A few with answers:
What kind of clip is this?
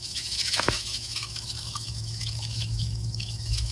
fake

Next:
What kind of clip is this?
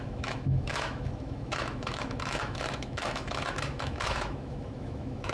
fake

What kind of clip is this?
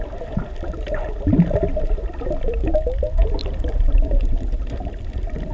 fake